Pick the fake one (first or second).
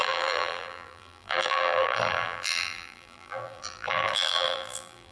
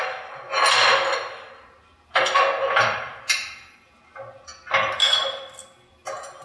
first